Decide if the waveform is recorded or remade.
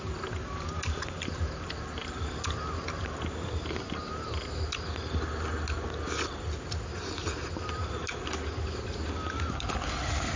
recorded